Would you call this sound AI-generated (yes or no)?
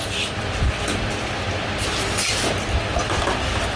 no